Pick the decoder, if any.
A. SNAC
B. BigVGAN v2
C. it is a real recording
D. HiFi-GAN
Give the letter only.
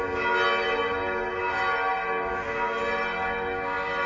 C